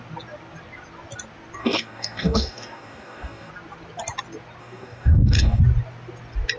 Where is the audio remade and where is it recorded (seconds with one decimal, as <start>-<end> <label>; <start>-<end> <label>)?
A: 0.0-1.6 recorded; 1.6-3.5 remade; 3.5-4.6 recorded; 4.6-5.6 remade; 5.6-6.6 recorded